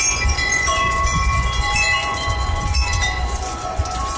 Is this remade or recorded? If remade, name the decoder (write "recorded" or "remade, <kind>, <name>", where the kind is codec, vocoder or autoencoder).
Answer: remade, vocoder, Vocos